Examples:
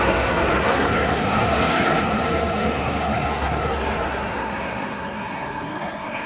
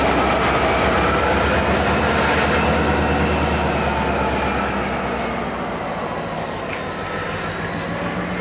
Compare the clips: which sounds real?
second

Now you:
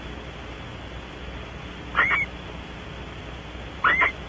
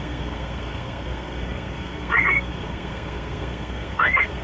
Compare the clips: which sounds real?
first